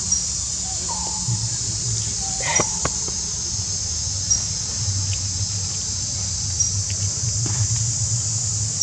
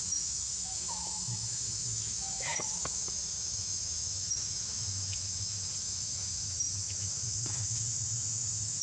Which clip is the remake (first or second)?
second